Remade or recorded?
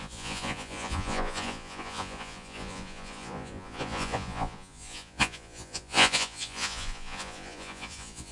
remade